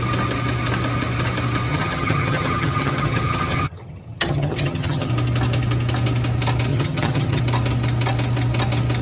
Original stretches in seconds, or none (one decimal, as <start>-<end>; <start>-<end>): 0.0-1.7; 5.1-6.7; 7.4-9.0

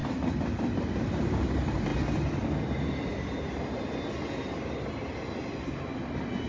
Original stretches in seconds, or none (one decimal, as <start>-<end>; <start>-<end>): 0.0-6.5

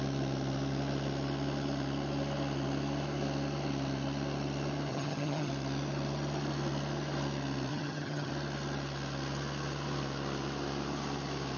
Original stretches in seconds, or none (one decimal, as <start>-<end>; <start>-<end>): 0.0-4.9; 5.5-7.7; 8.3-11.6

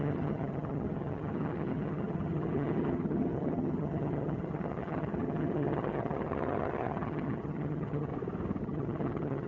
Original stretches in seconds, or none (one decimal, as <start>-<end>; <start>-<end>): 8.1-8.6

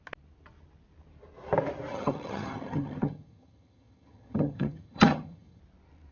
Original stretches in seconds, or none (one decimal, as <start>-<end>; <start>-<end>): 0.0-1.9; 5.6-6.1

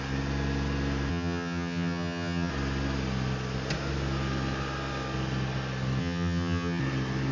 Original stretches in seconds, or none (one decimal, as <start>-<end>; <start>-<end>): 0.0-1.1; 2.5-6.0; 6.8-7.3